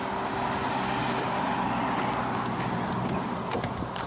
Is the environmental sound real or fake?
real